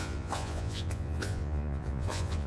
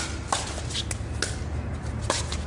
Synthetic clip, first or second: first